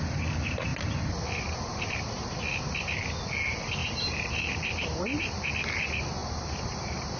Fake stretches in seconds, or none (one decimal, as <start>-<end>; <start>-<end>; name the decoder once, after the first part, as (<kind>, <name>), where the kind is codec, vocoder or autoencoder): 3.8-5.5 (vocoder, BigVGAN v2); 6.2-7.2